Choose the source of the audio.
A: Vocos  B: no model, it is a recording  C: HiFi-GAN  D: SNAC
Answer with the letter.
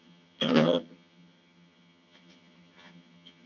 C